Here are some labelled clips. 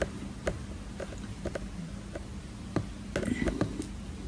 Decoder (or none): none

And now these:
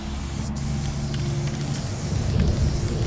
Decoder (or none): none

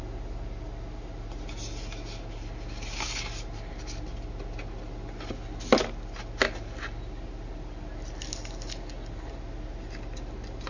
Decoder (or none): none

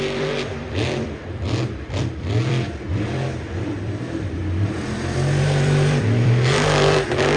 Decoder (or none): vocoder, BigVGAN v2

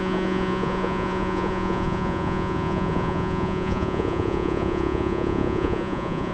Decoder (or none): vocoder, Vocos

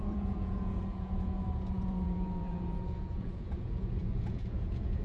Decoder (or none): vocoder, Vocos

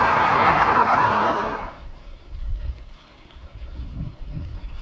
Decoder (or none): codec, SNAC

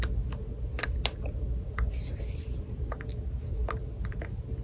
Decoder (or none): none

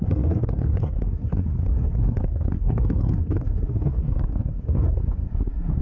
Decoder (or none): codec, SNAC